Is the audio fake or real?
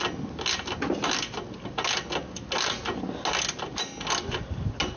real